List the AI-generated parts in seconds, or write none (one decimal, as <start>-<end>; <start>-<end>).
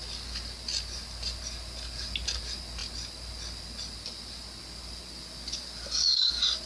none